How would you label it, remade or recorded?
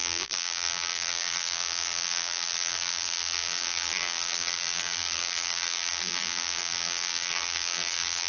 remade